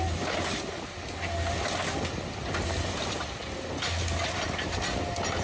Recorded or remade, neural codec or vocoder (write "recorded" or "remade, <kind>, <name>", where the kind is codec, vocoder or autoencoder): recorded